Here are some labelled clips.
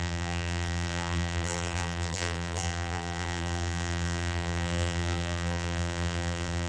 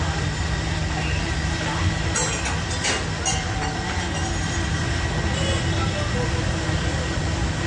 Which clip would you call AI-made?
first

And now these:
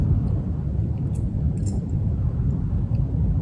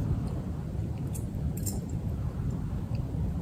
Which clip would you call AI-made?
second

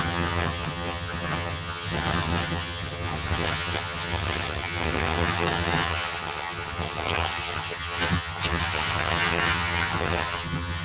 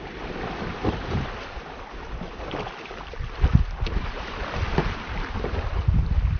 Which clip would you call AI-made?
first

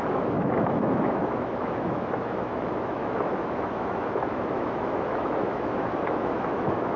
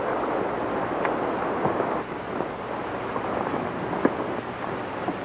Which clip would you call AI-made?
first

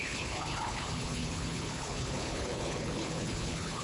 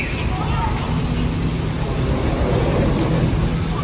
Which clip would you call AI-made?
first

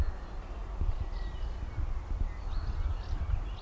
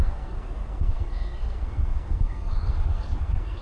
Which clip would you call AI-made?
second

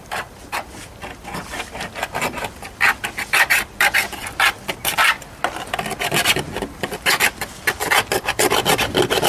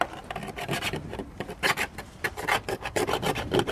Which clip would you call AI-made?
second